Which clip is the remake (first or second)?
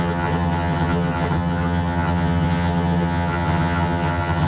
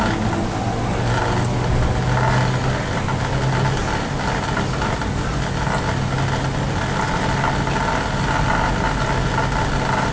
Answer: first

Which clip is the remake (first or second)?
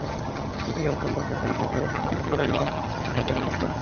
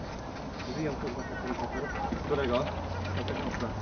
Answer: first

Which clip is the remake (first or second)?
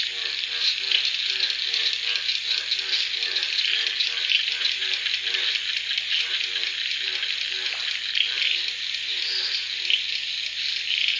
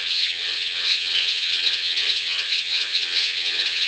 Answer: second